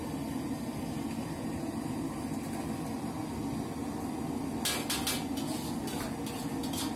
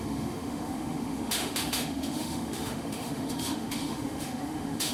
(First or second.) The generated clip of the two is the second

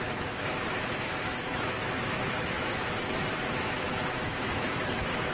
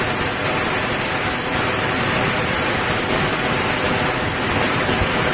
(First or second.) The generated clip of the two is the first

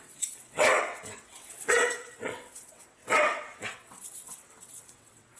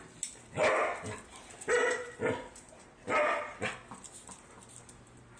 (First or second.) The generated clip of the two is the first